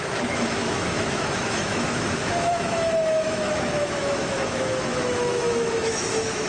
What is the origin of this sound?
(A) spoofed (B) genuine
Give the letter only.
A